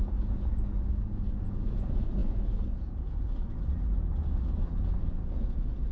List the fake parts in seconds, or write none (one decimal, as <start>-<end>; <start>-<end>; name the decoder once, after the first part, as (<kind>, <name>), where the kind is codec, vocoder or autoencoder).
0.0-5.9 (vocoder, Vocos)